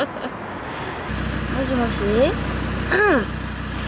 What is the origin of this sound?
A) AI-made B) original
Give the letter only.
B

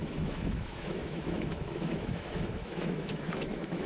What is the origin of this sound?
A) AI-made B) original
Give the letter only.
A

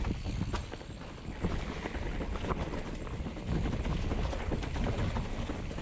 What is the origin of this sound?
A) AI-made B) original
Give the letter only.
B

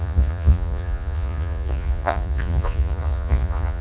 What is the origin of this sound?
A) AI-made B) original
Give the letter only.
A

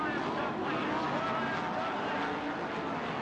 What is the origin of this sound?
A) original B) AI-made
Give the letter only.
A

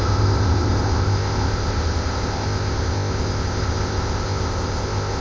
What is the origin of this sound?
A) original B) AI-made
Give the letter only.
B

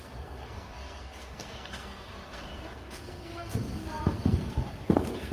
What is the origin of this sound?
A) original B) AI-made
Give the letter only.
B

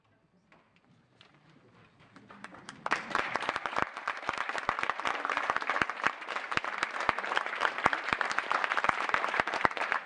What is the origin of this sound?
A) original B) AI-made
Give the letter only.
B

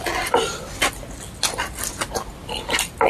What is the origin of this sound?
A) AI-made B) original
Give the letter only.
B